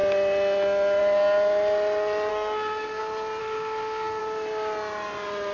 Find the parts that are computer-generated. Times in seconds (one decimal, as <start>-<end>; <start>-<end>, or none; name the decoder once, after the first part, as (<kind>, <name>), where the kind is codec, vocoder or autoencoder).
2.3-3.0 (codec, SNAC); 3.4-4.2